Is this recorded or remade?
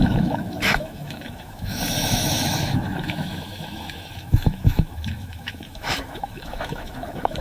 remade